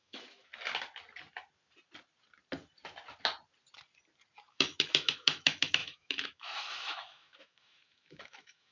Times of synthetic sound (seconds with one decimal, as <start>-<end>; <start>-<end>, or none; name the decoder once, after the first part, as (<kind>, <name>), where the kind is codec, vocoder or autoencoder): 0.0-0.5 (autoencoder, DAC-VAE); 4.5-8.7